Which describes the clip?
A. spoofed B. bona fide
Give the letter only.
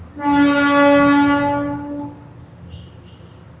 B